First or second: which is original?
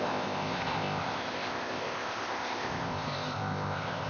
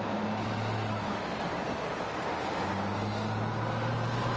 second